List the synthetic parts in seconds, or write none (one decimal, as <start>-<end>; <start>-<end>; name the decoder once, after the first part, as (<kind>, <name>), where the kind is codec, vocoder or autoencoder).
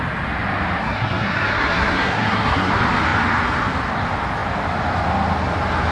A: 0.8-2.7 (codec, SNAC)